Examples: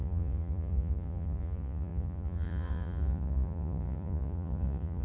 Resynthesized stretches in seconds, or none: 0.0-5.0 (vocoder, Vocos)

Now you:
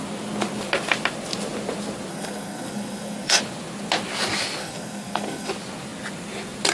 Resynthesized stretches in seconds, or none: 2.1-3.4 (codec, SNAC); 4.6-5.5

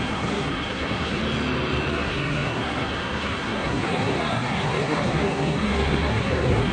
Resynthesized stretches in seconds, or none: 0.0-1.2 (codec, SNAC); 1.9-6.7

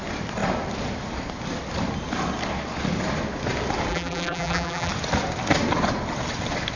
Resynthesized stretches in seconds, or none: 3.9-4.9 (vocoder, BigVGAN v2)

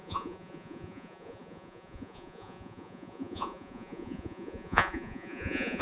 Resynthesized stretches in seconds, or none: 0.0-5.8 (vocoder, Vocos)

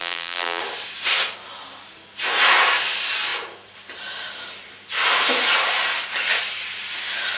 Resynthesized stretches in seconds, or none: 0.0-0.6 (vocoder, BigVGAN v2)

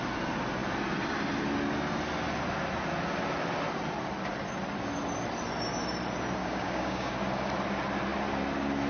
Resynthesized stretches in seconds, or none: 6.4-7.1 (codec, DAC)

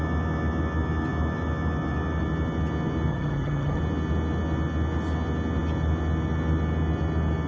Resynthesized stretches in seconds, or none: 3.1-3.8 (vocoder, HiFi-GAN)